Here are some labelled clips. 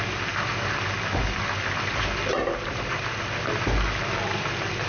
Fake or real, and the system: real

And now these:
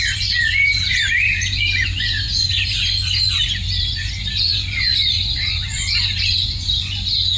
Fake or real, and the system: fake, vocoder, Vocos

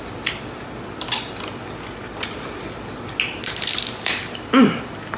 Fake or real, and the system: real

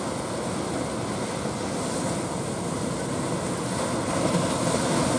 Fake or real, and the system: real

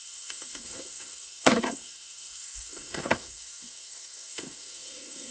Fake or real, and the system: fake, codec, SNAC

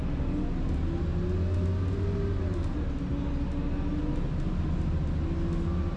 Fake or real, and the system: real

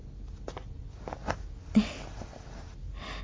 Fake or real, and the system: real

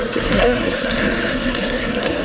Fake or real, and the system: fake, codec, SNAC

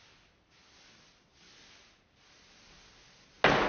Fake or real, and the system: real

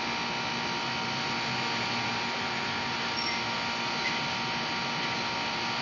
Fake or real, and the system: real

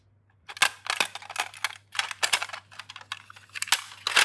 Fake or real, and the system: real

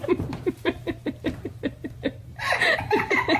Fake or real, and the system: fake, vocoder, BigVGAN v2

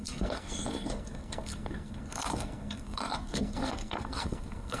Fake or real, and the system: fake, codec, SNAC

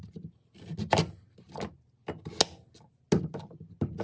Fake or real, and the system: real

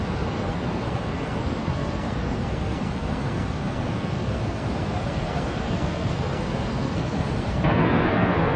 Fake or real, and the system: fake, codec, SNAC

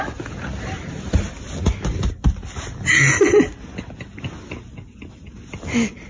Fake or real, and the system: real